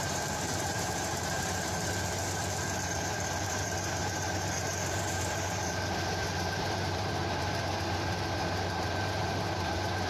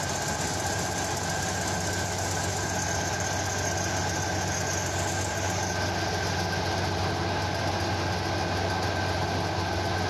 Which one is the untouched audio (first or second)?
second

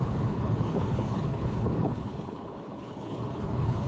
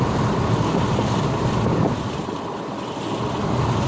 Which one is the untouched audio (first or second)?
second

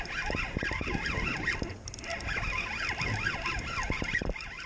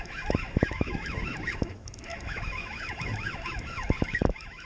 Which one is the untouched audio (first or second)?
first